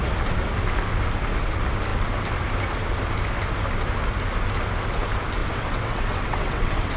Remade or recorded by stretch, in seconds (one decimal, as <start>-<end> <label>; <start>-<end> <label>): 0.0-5.4 recorded; 5.4-7.0 remade